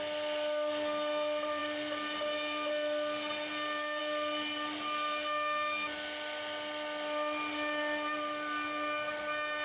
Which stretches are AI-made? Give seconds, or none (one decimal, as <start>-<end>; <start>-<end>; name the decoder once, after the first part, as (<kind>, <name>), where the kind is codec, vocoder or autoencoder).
none